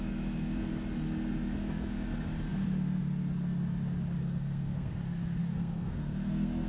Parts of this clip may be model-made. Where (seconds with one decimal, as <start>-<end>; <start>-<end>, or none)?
4.2-5.0; 5.4-6.7